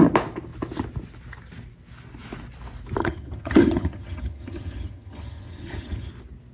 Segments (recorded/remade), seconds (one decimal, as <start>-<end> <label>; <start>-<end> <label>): 0.0-3.0 recorded; 3.0-6.1 remade; 6.1-6.5 recorded